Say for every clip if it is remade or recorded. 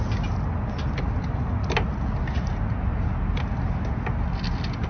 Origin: recorded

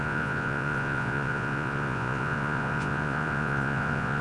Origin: remade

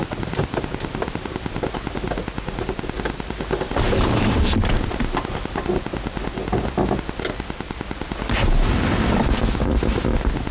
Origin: recorded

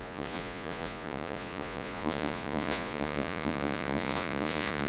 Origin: remade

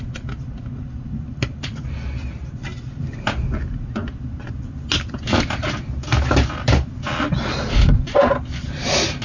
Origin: recorded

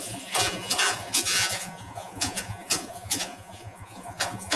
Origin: remade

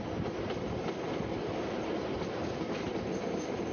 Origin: recorded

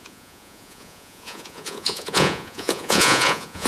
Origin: remade